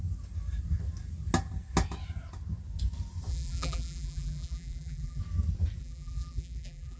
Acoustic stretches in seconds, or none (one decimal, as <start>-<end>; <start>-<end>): 0.0-3.3; 5.2-5.8